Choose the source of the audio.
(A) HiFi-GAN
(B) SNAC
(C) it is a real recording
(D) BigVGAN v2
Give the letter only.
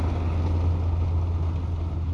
C